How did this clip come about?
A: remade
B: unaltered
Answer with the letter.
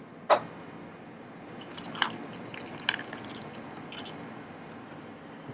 B